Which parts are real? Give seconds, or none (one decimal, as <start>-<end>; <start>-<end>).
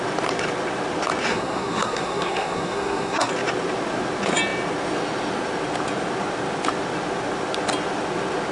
0.0-1.3; 3.3-8.5